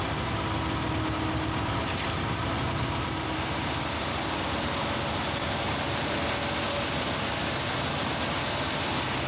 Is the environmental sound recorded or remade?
recorded